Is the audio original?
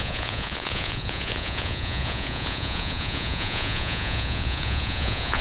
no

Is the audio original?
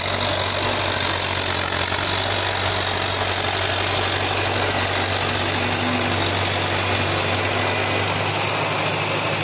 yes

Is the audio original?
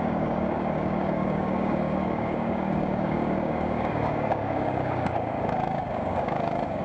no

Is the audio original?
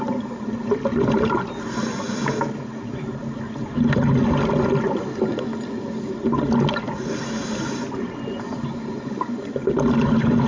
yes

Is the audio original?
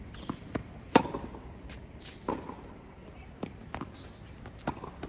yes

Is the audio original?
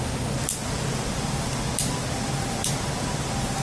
yes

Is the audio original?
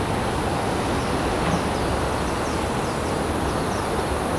yes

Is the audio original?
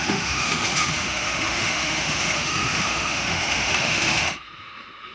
no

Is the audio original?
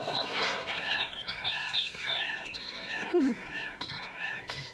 no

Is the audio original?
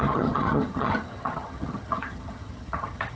no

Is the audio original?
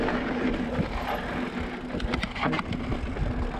yes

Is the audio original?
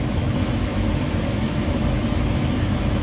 no